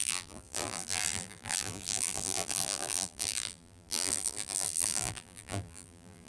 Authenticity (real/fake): fake